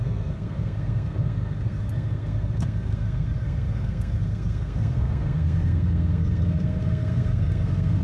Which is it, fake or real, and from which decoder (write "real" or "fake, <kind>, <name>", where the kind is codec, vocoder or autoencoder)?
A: fake, codec, SNAC